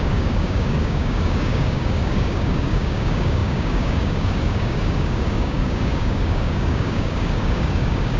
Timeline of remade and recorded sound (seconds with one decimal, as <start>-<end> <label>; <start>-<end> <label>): 0.0-8.2 remade